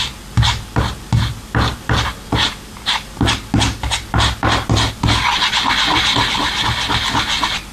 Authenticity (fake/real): real